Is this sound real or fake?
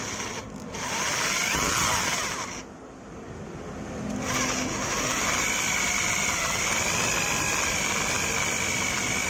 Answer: real